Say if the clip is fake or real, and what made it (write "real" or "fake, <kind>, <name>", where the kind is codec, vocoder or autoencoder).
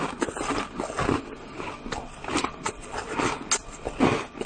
real